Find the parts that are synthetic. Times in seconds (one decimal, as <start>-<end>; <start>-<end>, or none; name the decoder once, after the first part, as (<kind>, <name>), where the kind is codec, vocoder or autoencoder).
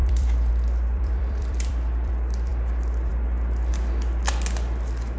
0.0-0.5 (vocoder, BigVGAN v2); 0.9-2.1; 3.7-4.3